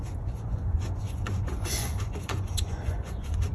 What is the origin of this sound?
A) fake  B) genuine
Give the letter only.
A